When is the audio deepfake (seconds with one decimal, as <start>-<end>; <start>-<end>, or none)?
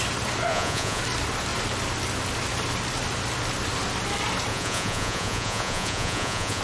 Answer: 0.5-1.0; 4.5-6.6